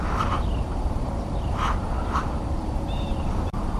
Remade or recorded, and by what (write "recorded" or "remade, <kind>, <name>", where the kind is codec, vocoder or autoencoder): remade, vocoder, BigVGAN v2